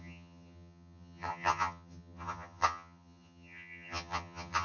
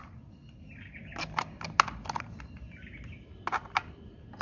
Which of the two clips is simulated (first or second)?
first